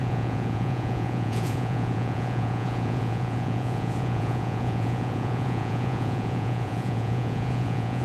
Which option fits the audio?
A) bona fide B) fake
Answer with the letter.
B